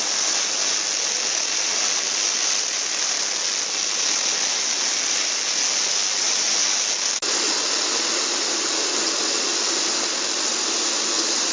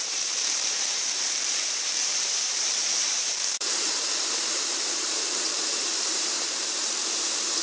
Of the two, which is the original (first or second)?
first